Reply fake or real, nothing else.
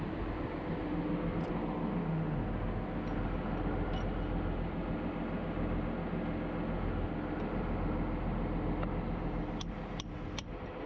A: real